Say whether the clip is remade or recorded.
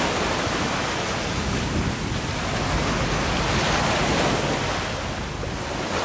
recorded